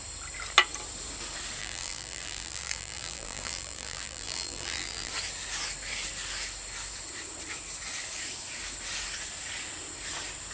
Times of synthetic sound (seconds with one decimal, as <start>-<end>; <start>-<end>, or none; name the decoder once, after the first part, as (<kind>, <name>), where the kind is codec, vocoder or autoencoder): 1.6-5.1 (vocoder, BigVGAN v2)